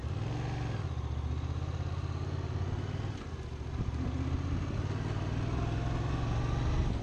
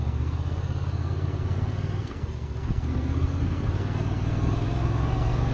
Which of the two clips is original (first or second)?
first